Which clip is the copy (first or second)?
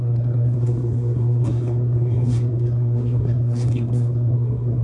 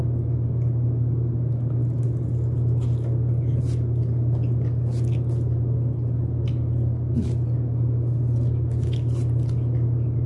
first